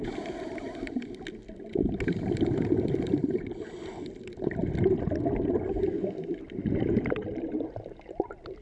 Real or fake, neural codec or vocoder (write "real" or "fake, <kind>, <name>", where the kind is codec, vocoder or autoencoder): real